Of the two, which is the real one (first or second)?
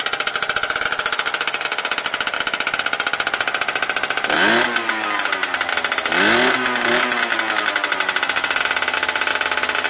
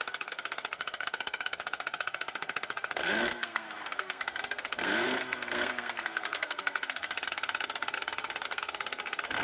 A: first